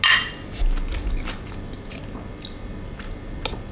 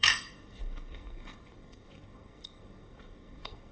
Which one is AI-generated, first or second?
second